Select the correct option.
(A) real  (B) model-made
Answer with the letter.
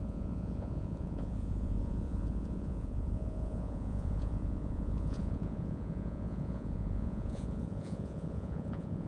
B